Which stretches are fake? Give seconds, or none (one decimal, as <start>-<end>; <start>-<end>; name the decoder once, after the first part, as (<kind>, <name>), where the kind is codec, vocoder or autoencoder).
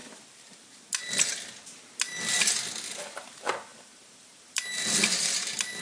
0.0-1.1 (vocoder, BigVGAN v2); 3.7-4.6